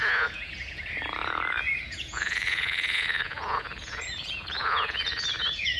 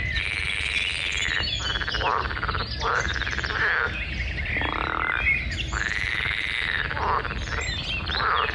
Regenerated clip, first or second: first